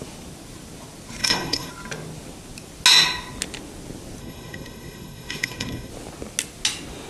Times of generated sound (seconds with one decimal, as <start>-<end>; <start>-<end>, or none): 1.2-1.7; 4.2-5.9